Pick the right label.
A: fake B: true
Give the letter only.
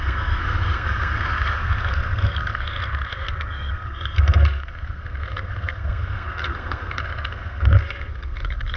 A